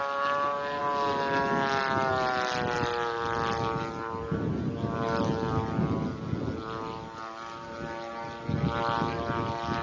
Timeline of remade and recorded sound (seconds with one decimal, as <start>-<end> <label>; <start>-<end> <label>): 0.0-9.8 recorded